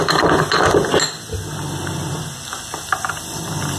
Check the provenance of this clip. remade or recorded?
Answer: recorded